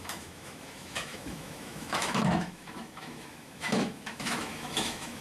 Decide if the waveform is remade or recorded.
remade